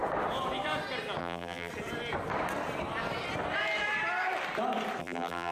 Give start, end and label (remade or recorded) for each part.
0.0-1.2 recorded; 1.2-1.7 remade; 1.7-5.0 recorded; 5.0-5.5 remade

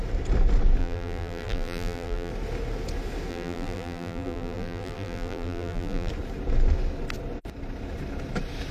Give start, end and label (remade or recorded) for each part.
0.0-0.8 recorded; 0.8-2.3 remade; 2.3-3.3 recorded; 3.3-6.1 remade; 6.1-8.7 recorded

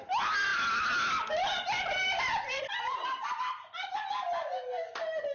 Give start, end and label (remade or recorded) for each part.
0.0-0.5 recorded; 0.5-2.6 remade; 2.6-5.3 recorded

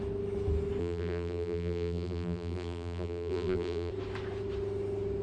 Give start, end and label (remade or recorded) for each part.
0.0-0.8 recorded; 0.8-3.9 remade; 3.9-5.2 recorded